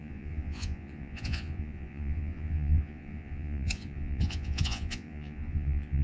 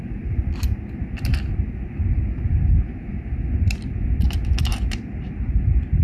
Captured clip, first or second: second